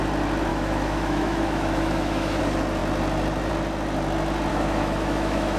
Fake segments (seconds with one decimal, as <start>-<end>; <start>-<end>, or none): 0.5-2.4; 4.5-5.6